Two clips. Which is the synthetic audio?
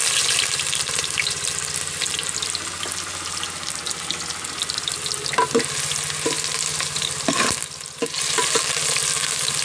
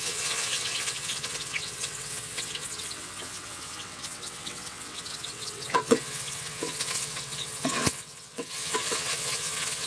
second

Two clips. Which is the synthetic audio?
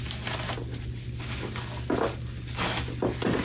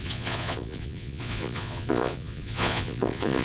second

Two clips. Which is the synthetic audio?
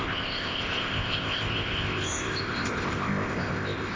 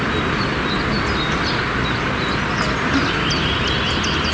first